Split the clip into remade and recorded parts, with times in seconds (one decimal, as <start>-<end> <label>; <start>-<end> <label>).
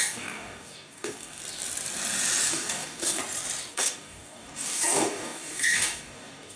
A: 0.0-1.4 remade; 1.4-2.5 recorded; 2.5-3.2 remade; 3.2-3.7 recorded; 3.7-6.6 remade